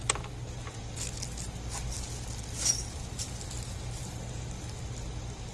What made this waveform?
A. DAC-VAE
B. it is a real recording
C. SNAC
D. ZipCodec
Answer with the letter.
B